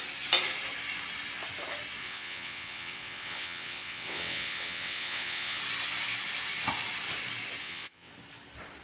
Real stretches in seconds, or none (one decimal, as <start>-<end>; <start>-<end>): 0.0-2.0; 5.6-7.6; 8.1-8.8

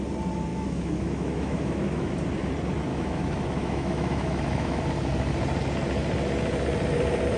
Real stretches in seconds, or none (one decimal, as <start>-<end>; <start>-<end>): 0.0-0.5; 2.1-2.9; 4.8-7.4

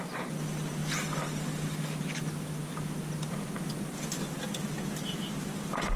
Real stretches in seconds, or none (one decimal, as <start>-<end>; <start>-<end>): 0.0-6.0

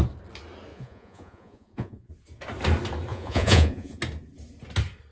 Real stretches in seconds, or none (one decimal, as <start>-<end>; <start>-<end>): 0.0-0.7; 2.1-3.1; 4.0-5.1

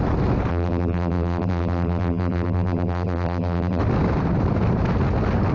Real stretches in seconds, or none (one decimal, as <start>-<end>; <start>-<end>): 0.0-0.5; 3.8-5.5

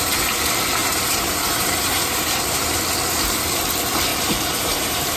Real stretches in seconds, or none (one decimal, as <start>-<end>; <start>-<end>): 0.0-0.8; 2.8-4.1

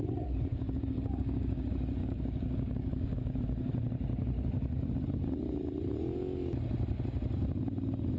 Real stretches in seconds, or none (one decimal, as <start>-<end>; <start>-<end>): 0.0-0.5; 1.6-2.0; 3.4-8.2

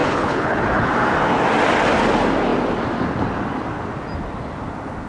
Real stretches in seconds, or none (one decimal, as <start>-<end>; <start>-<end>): 0.9-5.1